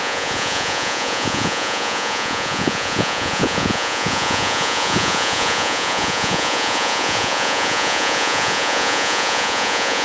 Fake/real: fake